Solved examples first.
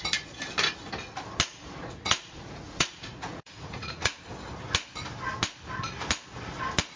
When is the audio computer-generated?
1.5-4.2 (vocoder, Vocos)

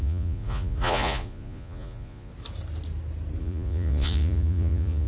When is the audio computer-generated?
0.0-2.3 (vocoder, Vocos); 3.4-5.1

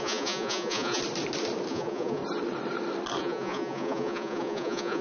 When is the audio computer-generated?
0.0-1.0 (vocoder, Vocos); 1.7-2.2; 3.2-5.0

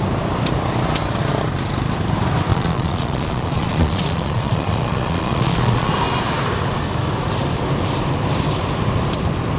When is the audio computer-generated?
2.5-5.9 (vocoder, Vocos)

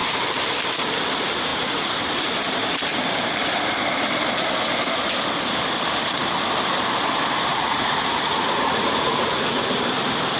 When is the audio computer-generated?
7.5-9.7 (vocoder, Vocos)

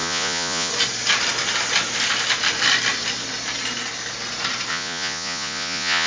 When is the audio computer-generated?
0.0-0.7 (vocoder, Vocos); 4.7-6.1

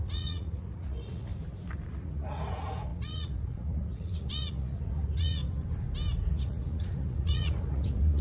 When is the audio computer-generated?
0.0-1.3 (vocoder, Vocos); 1.9-5.4; 6.3-8.2

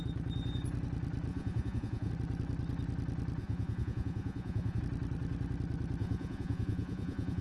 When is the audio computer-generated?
1.3-2.1 (vocoder, Vocos); 3.4-4.8; 6.0-7.4